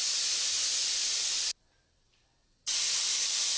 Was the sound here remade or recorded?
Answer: recorded